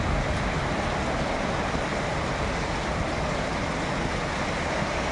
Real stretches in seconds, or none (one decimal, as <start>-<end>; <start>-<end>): 0.0-5.1